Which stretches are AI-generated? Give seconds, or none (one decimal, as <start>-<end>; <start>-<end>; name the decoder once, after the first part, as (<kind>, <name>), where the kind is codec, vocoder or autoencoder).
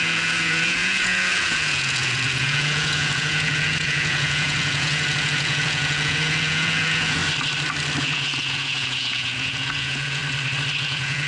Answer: 0.0-7.2 (vocoder, Vocos); 8.0-10.2; 10.8-11.3